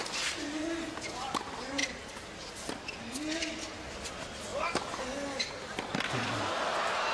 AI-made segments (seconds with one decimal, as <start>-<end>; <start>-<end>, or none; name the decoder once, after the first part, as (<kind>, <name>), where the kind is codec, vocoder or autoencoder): none